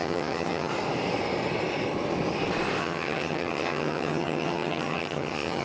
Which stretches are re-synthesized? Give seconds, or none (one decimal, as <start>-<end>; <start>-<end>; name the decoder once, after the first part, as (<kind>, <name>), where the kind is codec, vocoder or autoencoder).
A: 0.0-0.7 (vocoder, HiFi-GAN); 2.8-5.6